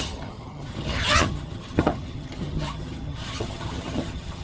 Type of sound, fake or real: fake